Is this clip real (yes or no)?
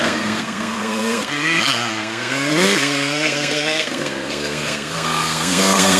no